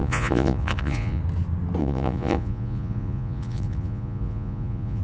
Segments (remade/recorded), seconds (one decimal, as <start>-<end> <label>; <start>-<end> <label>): 0.0-1.2 remade; 1.2-1.8 recorded; 1.8-5.0 remade